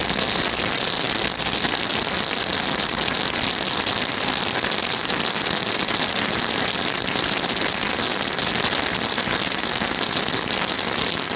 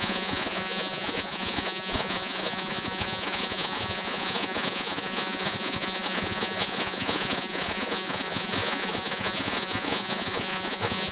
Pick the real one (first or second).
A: first